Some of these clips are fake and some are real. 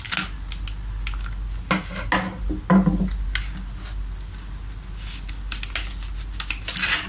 real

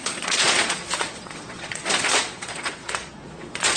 fake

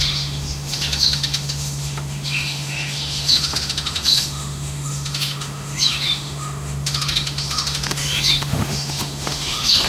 fake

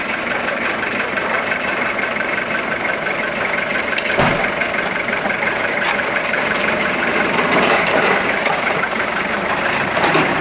fake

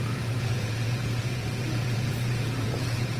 fake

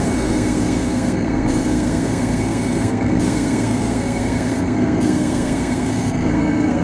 fake